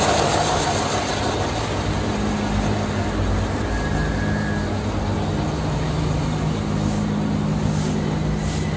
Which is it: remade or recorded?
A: recorded